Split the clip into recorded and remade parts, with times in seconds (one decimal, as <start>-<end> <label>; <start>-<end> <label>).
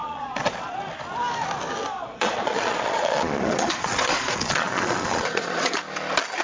0.0-0.8 remade; 0.8-2.0 recorded; 2.0-5.8 remade; 5.8-6.4 recorded